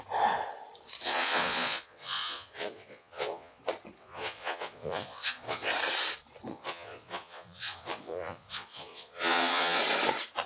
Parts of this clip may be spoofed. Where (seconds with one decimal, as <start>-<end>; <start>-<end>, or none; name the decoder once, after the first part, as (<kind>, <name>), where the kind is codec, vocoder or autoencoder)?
1.0-3.6 (vocoder, Vocos); 4.0-5.7; 6.5-9.8